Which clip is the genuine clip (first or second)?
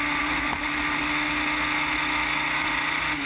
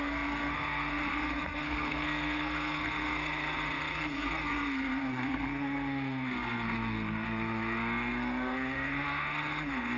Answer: first